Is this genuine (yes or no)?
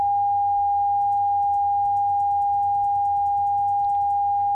yes